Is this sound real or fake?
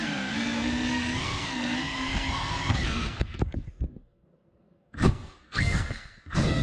fake